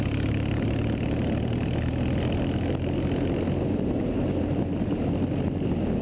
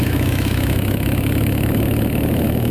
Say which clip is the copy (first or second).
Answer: second